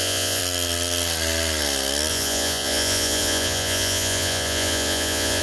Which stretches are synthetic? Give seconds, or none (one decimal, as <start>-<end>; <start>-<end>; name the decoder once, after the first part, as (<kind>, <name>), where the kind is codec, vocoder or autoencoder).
0.0-0.4 (vocoder, Vocos); 2.1-5.4

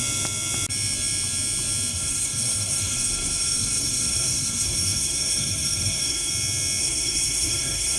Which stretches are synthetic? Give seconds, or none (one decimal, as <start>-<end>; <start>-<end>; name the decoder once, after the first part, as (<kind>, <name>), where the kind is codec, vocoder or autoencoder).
1.9-6.3 (codec, SNAC); 6.8-8.0

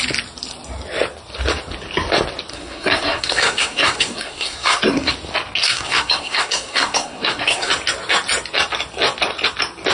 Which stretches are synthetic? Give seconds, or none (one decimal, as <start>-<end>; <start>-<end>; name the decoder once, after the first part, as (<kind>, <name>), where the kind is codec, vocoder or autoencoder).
2.5-5.1 (codec, SNAC); 5.6-7.7

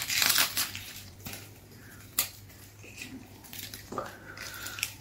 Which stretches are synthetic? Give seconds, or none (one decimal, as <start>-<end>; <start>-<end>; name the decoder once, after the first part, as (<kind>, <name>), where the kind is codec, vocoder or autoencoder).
0.0-5.0 (vocoder, BigVGAN v2)

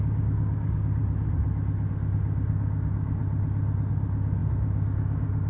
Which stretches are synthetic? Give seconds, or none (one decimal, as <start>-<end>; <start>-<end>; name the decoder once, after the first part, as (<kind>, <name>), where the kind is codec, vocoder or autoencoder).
0.0-1.0 (codec, DAC); 1.9-3.2; 3.9-5.5

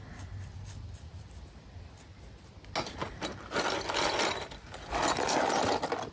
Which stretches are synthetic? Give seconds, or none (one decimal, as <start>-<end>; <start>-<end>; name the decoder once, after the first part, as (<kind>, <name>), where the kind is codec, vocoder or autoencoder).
none